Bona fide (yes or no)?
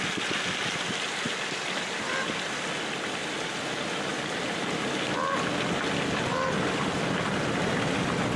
yes